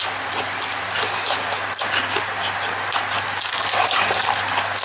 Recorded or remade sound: recorded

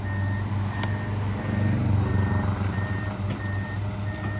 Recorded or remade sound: recorded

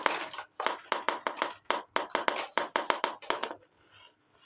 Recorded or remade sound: recorded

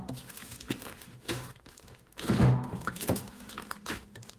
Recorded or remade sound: remade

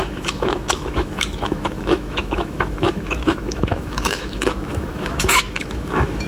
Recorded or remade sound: remade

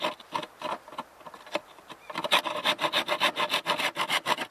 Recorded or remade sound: recorded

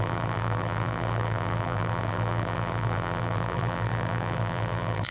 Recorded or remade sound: remade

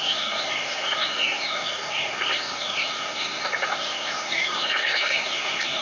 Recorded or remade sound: remade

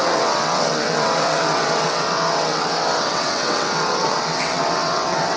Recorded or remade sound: remade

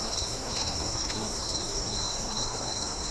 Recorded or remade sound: remade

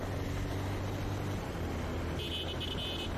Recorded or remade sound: recorded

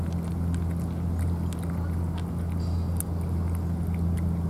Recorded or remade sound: recorded